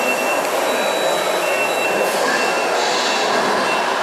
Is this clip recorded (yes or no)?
yes